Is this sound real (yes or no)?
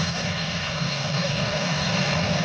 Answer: no